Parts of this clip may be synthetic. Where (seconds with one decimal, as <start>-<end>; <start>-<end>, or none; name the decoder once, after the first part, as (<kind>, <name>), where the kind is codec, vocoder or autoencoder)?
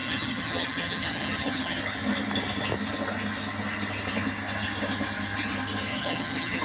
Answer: 0.0-1.8 (vocoder, HiFi-GAN); 5.9-6.6